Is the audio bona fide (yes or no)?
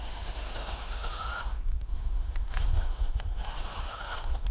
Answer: no